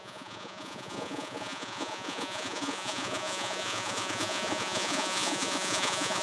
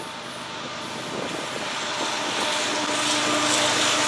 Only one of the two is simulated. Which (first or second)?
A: first